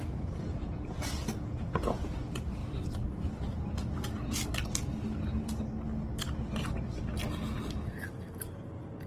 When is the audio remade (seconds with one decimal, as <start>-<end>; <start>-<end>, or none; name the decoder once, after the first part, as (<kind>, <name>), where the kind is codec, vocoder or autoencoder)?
0.0-2.1 (vocoder, Vocos)